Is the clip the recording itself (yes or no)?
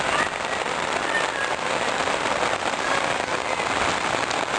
no